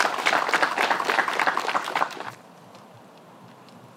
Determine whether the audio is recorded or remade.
recorded